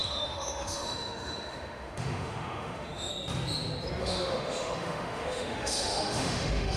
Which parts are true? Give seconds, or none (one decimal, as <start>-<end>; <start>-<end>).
3.1-4.0